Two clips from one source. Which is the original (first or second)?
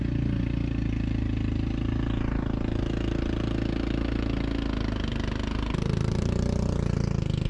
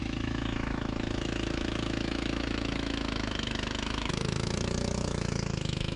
first